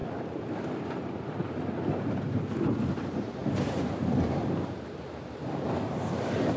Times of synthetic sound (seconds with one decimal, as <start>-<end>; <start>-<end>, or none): 0.8-6.6